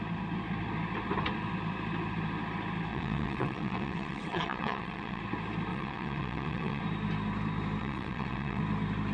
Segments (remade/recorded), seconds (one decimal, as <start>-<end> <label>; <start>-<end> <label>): 0.0-2.9 recorded; 2.9-5.2 remade; 5.2-5.7 recorded; 5.7-6.8 remade; 6.8-7.8 recorded; 7.8-8.6 remade; 8.6-9.1 recorded